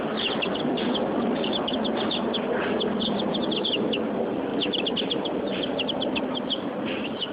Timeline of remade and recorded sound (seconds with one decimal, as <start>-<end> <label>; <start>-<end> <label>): 0.0-4.5 recorded; 4.5-6.7 remade; 6.7-7.3 recorded